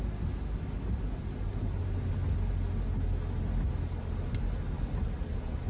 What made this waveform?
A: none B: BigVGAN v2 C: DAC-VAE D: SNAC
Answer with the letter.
A